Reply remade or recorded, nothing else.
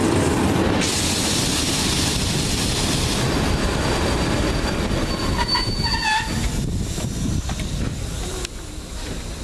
recorded